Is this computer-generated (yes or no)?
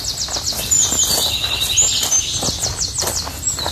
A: no